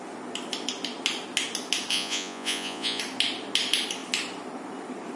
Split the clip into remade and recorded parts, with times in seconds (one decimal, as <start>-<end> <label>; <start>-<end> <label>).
0.0-1.9 recorded; 1.9-3.0 remade; 3.0-5.2 recorded